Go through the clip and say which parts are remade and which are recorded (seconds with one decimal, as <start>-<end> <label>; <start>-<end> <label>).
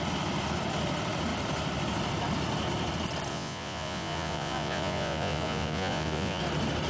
0.0-3.3 recorded; 3.3-6.4 remade; 6.4-6.9 recorded